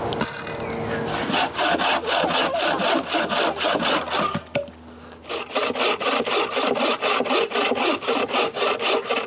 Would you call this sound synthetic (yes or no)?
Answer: no